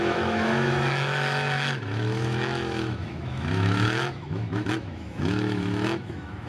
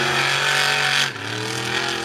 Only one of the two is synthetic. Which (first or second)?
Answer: first